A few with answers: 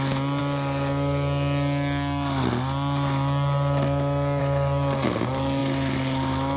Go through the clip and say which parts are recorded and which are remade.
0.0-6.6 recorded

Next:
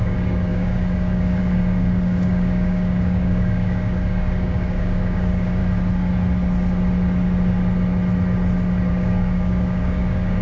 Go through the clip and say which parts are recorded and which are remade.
0.0-5.6 remade; 5.6-8.9 recorded; 8.9-10.4 remade

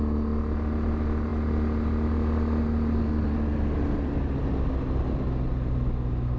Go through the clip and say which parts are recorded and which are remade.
0.0-6.4 recorded

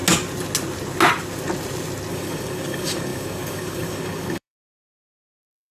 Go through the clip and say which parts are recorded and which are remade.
0.0-2.1 recorded; 2.1-5.7 remade

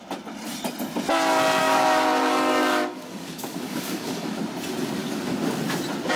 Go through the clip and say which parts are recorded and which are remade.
0.0-1.6 recorded; 1.6-4.4 remade; 4.4-5.0 recorded; 5.0-5.6 remade; 5.6-6.2 recorded

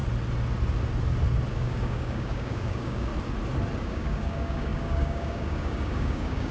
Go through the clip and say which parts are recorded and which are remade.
0.0-1.5 recorded; 1.5-3.1 remade; 3.1-3.8 recorded; 3.8-6.5 remade